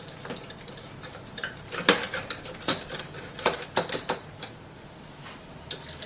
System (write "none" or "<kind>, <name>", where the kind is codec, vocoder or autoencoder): vocoder, BigVGAN v2